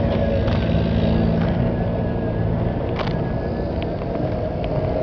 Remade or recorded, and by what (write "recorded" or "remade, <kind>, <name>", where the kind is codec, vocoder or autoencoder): recorded